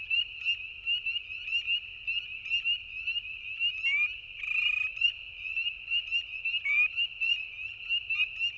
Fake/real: real